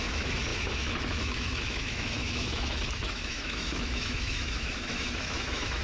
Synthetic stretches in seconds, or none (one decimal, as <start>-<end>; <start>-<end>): 0.0-5.8